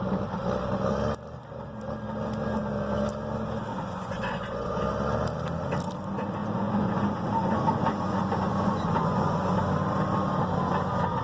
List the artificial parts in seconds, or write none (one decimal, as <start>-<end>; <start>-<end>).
3.7-4.8; 6.4-9.6